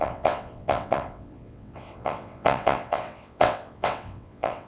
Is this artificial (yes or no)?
yes